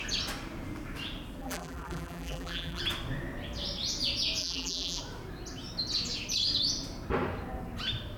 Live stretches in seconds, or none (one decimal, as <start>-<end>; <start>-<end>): 0.0-1.4; 2.8-4.4; 5.0-8.2